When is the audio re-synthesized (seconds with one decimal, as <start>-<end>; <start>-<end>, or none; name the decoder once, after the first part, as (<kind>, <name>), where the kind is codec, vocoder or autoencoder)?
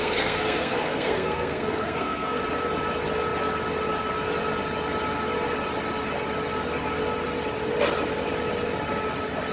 0.0-2.4 (codec, SNAC)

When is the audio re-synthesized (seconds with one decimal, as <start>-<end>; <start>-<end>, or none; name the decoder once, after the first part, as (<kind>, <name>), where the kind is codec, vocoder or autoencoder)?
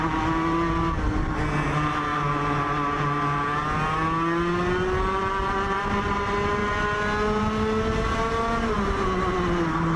none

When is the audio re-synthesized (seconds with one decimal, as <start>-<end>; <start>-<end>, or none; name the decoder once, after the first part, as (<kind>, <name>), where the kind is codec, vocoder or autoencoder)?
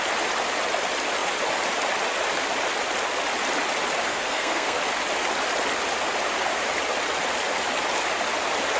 4.1-4.8 (codec, SNAC)